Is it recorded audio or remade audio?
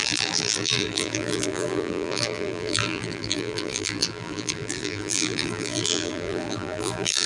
remade